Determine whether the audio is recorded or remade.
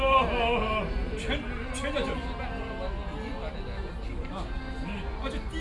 recorded